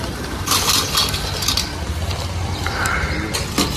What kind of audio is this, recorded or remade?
recorded